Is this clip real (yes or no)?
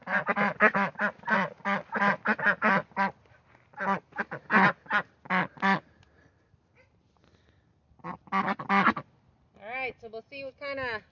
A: yes